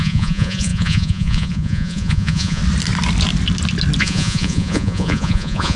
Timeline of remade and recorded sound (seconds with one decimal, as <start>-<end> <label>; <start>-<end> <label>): 0.0-2.6 remade; 2.6-4.0 recorded; 4.0-5.8 remade